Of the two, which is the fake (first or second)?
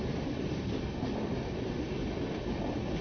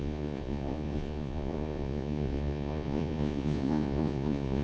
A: second